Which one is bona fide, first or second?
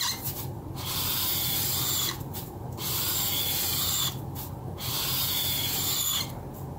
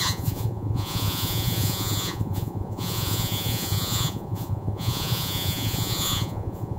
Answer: first